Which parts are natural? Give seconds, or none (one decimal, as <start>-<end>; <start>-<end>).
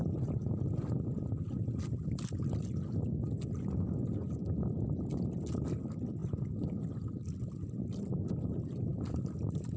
0.0-9.8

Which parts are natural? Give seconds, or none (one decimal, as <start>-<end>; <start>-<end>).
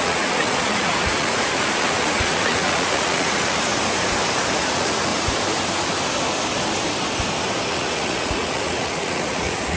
3.7-4.6; 5.1-7.7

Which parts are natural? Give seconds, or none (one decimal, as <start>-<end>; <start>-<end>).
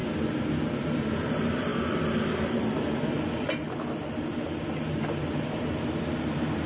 0.0-6.7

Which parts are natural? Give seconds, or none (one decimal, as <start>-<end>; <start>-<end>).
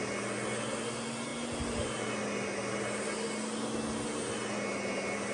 0.0-5.3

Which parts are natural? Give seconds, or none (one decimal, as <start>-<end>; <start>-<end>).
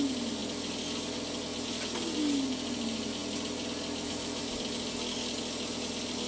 0.0-6.3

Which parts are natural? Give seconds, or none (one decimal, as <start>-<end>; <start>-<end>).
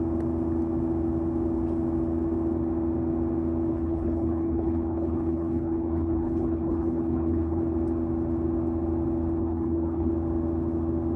0.0-3.7; 7.6-9.4; 10.1-11.2